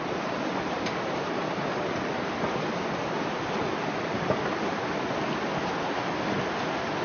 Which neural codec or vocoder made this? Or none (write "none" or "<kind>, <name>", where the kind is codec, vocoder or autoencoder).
none